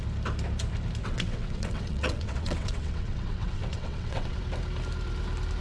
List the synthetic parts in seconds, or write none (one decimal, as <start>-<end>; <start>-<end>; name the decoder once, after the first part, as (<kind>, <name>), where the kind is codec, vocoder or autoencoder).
1.0-4.4 (vocoder, WaveNeXt)